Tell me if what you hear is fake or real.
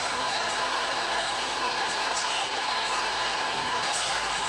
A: fake